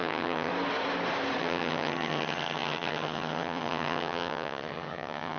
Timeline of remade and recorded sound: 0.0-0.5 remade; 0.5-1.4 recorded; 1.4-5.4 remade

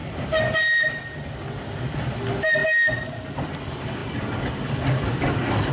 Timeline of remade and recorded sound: 0.0-5.7 recorded

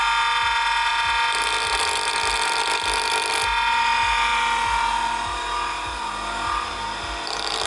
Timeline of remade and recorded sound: 0.0-7.7 recorded

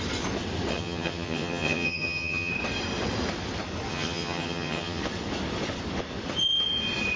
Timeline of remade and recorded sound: 0.0-0.7 recorded; 0.7-2.5 remade; 2.5-3.9 recorded; 3.9-5.0 remade; 5.0-7.2 recorded

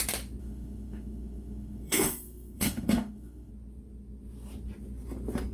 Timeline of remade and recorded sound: 0.0-0.4 recorded; 0.4-3.5 remade; 3.5-5.5 recorded

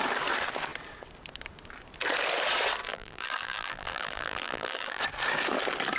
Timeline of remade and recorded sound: 0.0-2.9 recorded; 2.9-5.0 remade; 5.0-6.0 recorded

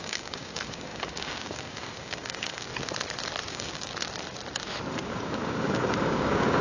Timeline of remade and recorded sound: 0.0-2.7 remade; 2.7-3.5 recorded; 3.5-3.9 remade; 3.9-4.9 recorded; 4.9-6.6 remade

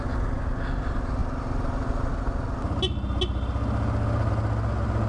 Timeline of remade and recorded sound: 0.0-5.1 recorded